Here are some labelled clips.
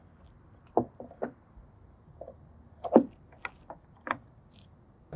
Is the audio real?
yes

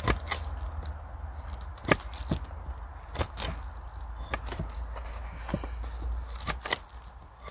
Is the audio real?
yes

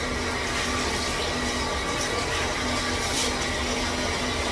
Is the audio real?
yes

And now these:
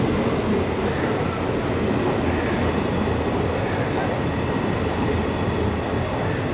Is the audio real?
yes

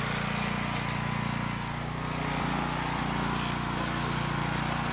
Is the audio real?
yes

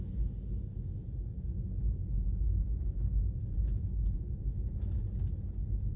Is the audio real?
yes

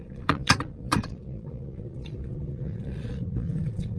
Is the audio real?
no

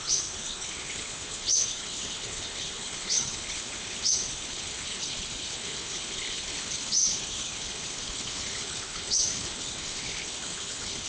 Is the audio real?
no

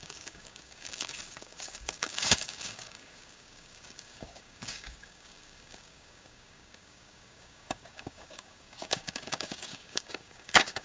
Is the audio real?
no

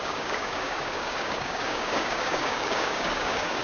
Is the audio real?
no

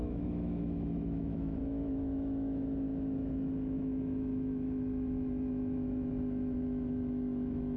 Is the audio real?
no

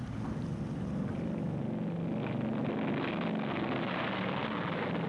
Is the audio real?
yes